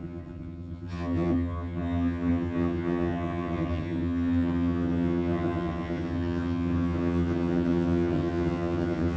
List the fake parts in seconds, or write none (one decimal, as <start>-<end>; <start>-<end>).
0.0-9.2